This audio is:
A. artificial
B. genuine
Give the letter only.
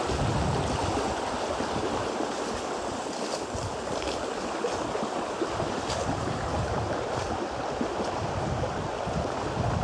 B